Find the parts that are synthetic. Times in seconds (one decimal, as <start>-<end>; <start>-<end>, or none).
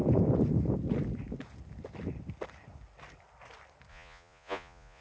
3.9-5.0